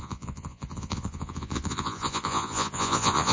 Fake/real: fake